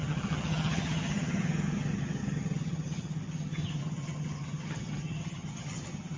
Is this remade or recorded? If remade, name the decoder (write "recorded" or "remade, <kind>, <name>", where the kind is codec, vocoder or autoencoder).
remade, vocoder, HiFi-GAN